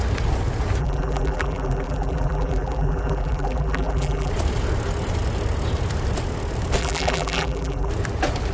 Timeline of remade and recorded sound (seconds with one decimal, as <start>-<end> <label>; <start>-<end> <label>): 0.0-0.8 recorded; 0.8-4.3 remade; 4.3-6.8 recorded; 6.8-7.9 remade; 7.9-8.5 recorded